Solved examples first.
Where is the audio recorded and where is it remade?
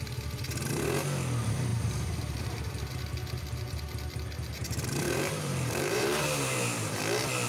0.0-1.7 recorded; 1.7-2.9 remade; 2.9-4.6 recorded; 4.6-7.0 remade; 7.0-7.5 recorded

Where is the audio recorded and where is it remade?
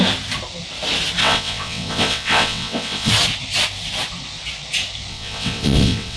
0.0-1.2 recorded; 1.2-3.1 remade; 3.1-5.1 recorded; 5.1-6.2 remade